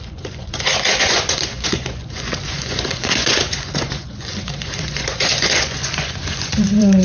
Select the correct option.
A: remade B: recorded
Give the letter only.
A